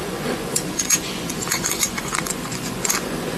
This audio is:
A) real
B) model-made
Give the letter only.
B